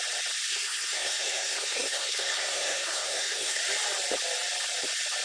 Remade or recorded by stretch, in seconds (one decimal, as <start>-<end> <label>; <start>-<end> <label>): 0.0-0.5 recorded; 0.5-3.6 remade; 3.6-5.2 recorded